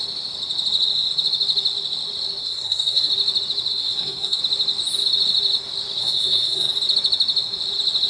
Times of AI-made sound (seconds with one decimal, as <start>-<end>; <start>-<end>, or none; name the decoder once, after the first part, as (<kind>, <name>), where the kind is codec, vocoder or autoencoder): 2.4-3.1 (codec, SNAC); 3.7-4.4; 6.0-6.7